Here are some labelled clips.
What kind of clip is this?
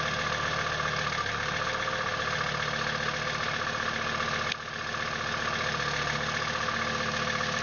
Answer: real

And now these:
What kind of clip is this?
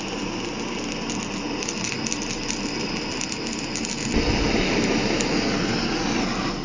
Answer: real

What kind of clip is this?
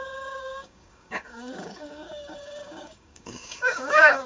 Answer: fake